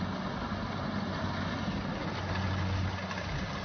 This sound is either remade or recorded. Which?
recorded